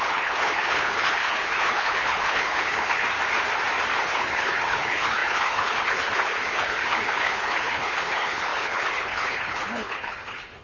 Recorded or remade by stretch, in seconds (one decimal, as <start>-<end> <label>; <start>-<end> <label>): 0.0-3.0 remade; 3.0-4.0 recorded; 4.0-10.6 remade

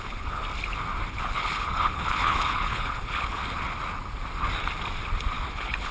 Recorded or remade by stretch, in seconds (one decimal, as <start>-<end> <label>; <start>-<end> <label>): 0.0-0.4 remade; 0.4-1.1 recorded; 1.1-3.4 remade; 3.4-5.5 recorded; 5.5-5.9 remade

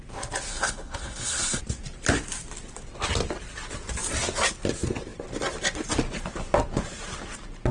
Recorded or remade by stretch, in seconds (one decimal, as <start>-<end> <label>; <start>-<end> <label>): 0.0-0.5 recorded; 0.5-1.6 remade; 1.6-7.7 recorded